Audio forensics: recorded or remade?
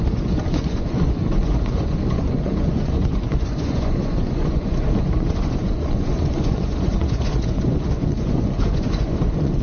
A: remade